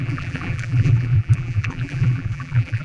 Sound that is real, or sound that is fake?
fake